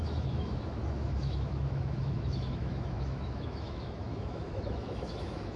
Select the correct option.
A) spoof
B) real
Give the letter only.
A